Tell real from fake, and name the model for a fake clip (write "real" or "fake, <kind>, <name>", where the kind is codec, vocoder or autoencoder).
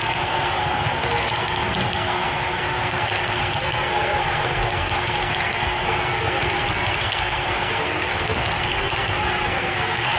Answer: fake, codec, SNAC